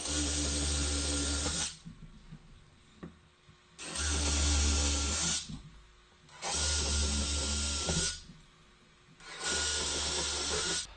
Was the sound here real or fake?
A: real